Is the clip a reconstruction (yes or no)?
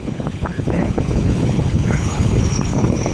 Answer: yes